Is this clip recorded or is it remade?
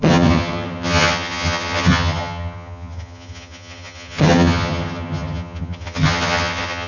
remade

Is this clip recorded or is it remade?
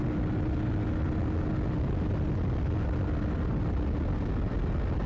recorded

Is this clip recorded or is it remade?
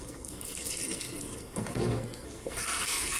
remade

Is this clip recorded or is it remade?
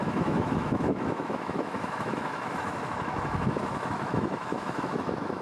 remade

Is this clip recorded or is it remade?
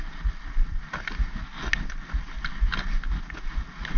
recorded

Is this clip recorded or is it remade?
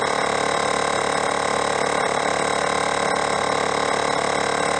recorded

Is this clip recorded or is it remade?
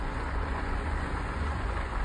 remade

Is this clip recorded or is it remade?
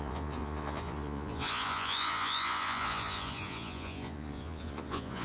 remade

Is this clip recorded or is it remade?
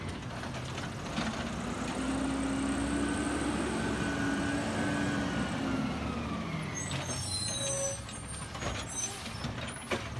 recorded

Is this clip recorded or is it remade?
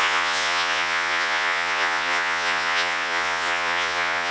remade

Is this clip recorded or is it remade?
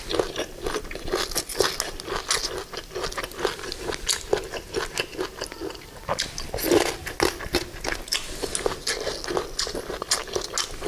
recorded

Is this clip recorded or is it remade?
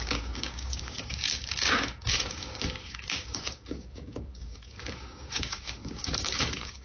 remade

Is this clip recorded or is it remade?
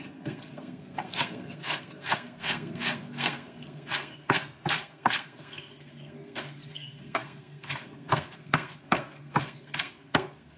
remade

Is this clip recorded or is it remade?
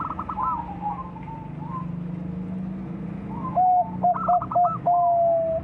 recorded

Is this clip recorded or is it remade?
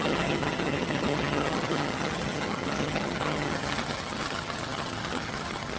remade